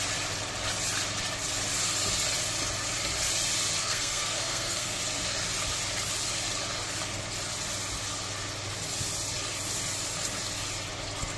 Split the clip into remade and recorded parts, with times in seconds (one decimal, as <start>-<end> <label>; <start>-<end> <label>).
0.0-3.8 recorded; 3.8-5.0 remade; 5.0-11.4 recorded